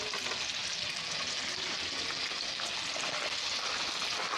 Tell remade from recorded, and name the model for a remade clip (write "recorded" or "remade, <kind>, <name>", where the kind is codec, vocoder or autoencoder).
recorded